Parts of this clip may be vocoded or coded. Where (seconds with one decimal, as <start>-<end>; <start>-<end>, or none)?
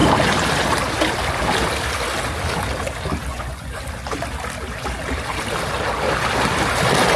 3.3-3.8